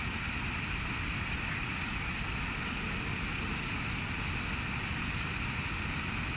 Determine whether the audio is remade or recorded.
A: recorded